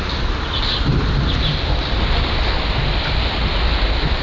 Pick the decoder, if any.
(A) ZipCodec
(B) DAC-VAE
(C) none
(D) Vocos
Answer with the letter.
C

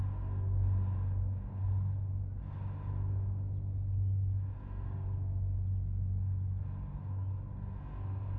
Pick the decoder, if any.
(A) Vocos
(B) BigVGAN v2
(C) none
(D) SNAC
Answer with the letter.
C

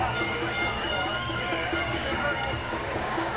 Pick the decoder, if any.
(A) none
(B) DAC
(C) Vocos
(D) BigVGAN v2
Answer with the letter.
B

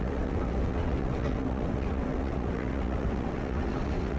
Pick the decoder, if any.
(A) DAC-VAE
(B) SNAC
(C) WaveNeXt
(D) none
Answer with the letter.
C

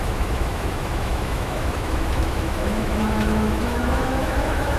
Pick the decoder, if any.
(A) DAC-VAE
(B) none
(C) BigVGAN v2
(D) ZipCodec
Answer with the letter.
A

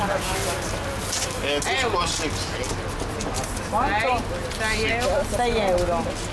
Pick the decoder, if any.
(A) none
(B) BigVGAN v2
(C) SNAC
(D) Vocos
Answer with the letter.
A